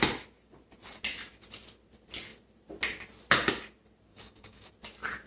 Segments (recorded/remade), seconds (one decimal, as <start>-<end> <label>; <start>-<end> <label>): 0.0-4.1 recorded; 4.1-4.7 remade; 4.7-5.3 recorded